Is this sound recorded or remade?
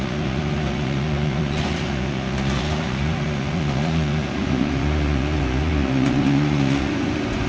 remade